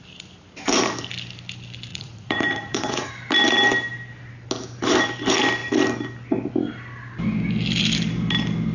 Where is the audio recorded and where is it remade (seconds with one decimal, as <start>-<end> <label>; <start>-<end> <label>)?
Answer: 0.0-1.9 recorded; 1.9-3.1 remade; 3.1-8.7 recorded

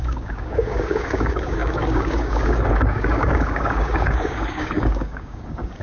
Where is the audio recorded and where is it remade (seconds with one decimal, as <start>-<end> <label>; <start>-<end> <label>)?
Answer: 0.0-5.8 remade

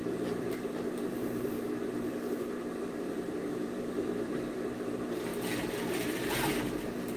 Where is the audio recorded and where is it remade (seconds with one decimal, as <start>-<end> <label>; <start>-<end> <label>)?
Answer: 0.0-5.3 remade; 5.3-5.9 recorded; 5.9-7.2 remade

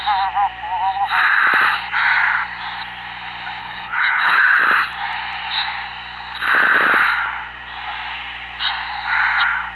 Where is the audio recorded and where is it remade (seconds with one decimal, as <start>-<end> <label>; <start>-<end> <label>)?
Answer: 0.0-3.6 recorded; 3.6-4.6 remade; 4.6-9.8 recorded

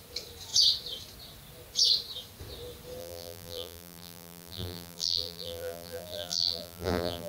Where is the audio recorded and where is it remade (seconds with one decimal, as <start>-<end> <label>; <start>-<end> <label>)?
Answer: 0.0-3.0 recorded; 3.0-7.3 remade